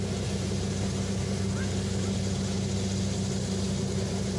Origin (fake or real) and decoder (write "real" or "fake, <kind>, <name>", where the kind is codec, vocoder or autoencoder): real